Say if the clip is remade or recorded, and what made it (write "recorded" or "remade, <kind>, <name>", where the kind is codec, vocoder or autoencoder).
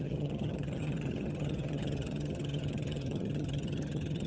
remade, vocoder, HiFi-GAN